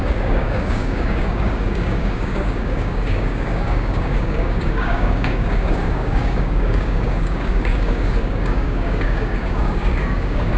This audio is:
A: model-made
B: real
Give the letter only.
A